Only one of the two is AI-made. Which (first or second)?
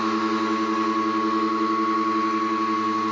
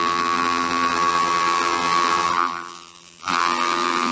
second